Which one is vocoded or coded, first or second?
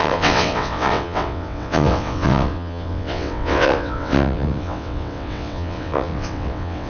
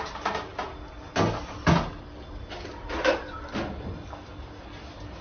first